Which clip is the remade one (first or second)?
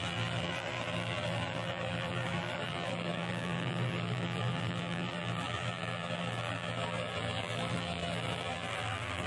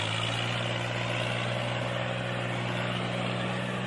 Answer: first